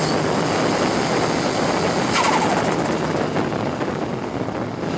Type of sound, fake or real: real